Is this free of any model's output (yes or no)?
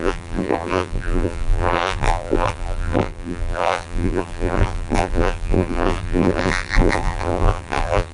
no